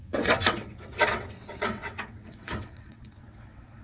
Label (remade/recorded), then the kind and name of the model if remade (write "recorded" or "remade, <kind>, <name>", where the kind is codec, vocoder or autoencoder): remade, vocoder, WaveNeXt